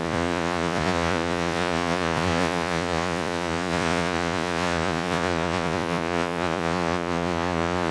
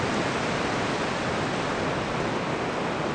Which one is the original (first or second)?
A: second